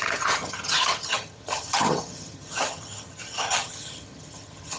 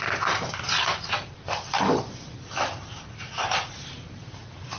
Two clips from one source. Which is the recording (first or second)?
second